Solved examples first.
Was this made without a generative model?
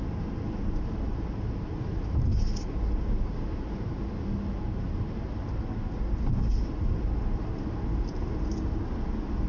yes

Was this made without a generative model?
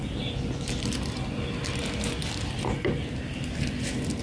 yes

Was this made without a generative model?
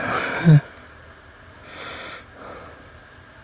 yes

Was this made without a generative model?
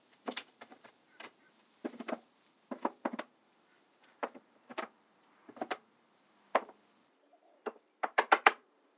no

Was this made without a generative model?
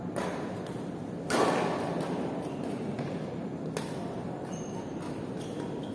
yes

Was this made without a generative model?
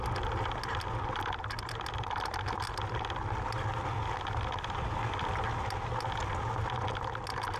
yes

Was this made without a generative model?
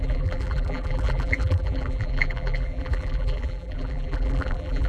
no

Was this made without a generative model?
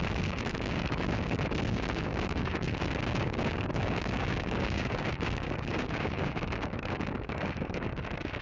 no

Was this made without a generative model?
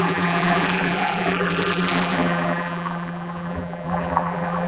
no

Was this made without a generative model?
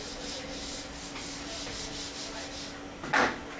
yes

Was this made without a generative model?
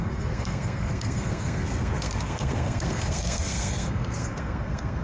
no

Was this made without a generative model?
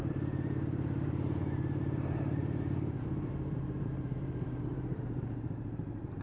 no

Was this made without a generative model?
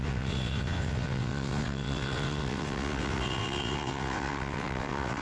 no